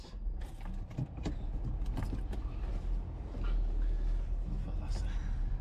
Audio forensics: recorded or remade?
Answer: recorded